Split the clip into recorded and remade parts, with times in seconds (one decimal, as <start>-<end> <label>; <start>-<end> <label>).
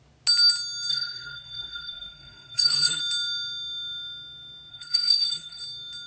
0.0-0.9 recorded; 0.9-3.0 remade; 3.0-4.7 recorded; 4.7-5.6 remade; 5.6-6.1 recorded